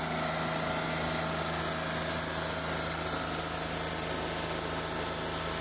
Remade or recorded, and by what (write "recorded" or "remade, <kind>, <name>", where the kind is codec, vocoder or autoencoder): recorded